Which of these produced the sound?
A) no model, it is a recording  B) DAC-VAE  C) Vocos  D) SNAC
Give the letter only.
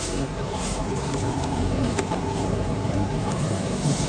D